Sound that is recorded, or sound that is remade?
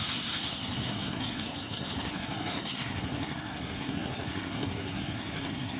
remade